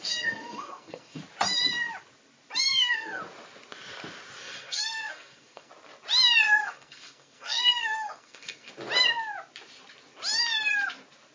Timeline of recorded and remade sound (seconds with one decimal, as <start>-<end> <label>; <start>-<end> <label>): 0.0-1.2 remade; 1.2-2.7 recorded; 2.7-3.2 remade; 3.2-4.4 recorded; 4.4-5.7 remade; 5.7-6.6 recorded; 6.6-8.7 remade; 8.7-11.3 recorded

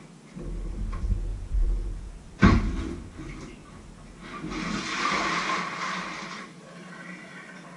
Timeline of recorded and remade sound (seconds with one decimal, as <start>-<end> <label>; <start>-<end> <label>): 0.0-1.3 recorded; 1.3-2.1 remade; 2.1-7.8 recorded

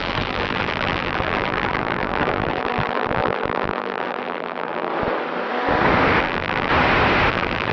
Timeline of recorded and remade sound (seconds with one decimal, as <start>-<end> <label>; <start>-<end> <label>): 0.0-4.9 remade; 4.9-6.2 recorded; 6.2-6.7 remade; 6.7-7.3 recorded; 7.3-7.7 remade

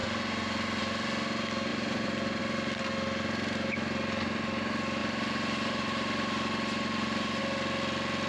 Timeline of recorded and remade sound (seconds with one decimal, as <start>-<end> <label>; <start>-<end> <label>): 0.0-1.7 recorded; 1.7-2.4 remade; 2.4-5.0 recorded; 5.0-7.4 remade; 7.4-8.3 recorded

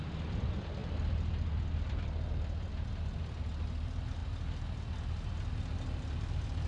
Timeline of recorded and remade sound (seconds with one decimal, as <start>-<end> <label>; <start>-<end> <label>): 0.0-6.7 recorded

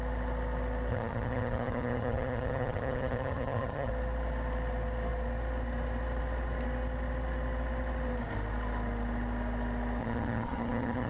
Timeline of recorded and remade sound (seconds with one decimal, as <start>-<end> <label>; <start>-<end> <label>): 0.0-0.9 recorded; 0.9-3.9 remade; 3.9-10.0 recorded; 10.0-11.1 remade